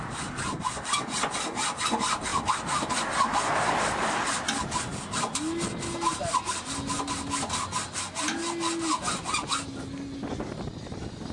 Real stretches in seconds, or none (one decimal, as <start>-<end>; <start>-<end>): 0.0-11.3